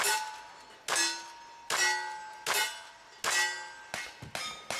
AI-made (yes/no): no